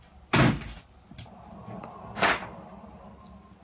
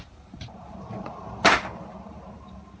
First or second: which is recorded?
first